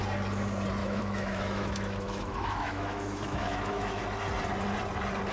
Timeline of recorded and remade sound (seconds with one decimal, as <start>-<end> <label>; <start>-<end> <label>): 0.0-0.8 recorded; 0.8-4.0 remade; 4.0-5.3 recorded